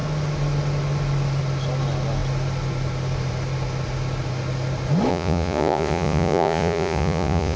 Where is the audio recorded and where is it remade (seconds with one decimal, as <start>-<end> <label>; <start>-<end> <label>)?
0.0-5.1 recorded; 5.1-7.6 remade